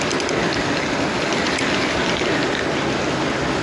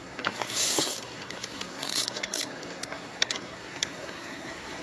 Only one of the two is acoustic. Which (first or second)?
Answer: first